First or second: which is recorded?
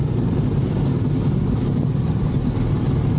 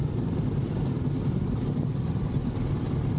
first